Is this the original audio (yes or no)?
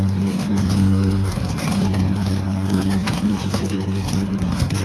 no